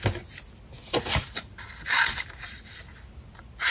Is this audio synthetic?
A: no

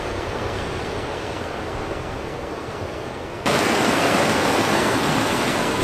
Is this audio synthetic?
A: yes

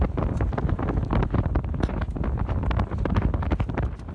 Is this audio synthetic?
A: no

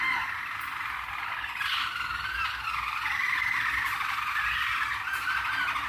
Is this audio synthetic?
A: no